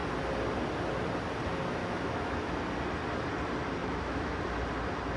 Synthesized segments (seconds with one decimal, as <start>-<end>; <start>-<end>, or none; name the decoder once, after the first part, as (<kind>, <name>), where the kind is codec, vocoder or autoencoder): 1.8-2.5 (autoencoder, DAC-VAE); 3.8-4.4